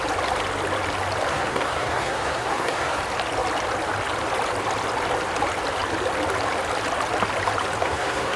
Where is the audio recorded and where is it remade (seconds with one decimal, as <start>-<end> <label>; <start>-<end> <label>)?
0.0-1.3 recorded; 1.3-3.0 remade; 3.0-7.8 recorded; 7.8-8.4 remade